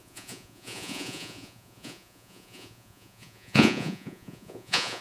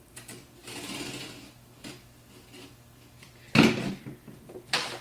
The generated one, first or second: first